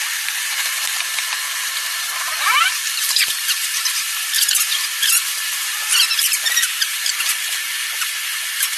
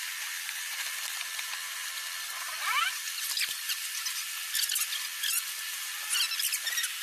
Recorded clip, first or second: second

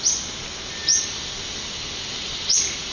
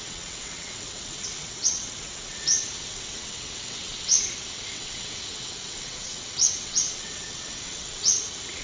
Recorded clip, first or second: first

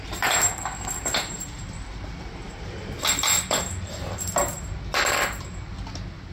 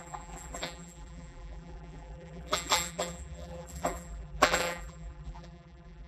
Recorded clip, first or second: first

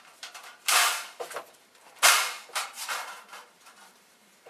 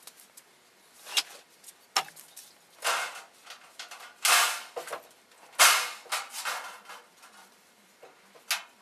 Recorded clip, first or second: second